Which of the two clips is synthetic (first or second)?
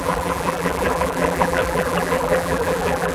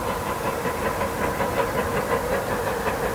first